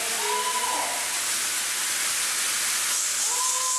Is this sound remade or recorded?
recorded